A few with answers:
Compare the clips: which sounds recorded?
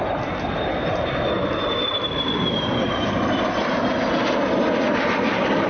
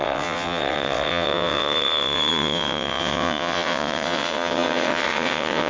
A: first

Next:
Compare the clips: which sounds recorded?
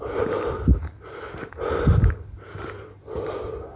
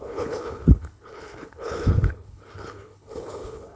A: first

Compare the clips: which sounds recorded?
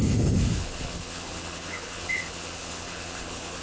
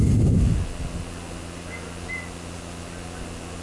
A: second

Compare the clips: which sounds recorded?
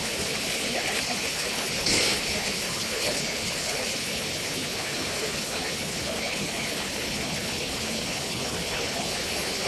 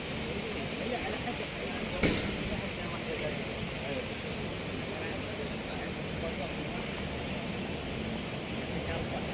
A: second